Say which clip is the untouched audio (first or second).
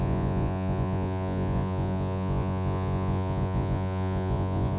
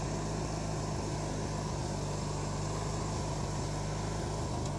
second